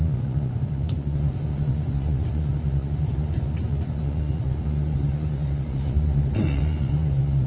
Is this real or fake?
fake